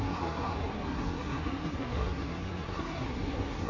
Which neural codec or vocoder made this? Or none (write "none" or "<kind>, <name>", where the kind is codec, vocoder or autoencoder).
codec, SNAC